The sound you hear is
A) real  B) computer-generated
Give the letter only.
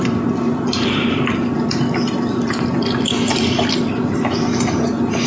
B